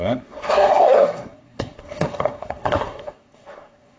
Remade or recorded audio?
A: remade